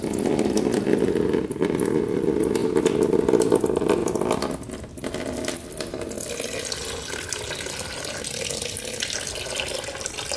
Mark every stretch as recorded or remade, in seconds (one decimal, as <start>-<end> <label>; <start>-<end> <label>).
0.0-10.4 recorded